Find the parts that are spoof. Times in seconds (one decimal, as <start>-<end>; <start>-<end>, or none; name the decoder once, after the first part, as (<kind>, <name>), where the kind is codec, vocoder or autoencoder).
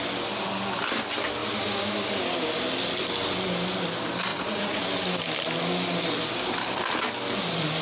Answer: 4.3-4.8 (vocoder, Vocos)